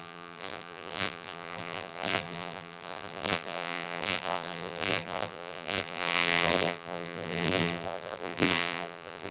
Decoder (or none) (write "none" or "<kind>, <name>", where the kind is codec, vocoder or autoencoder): vocoder, BigVGAN v2